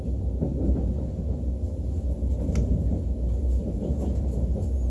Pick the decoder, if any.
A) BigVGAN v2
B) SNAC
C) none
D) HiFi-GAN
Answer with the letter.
C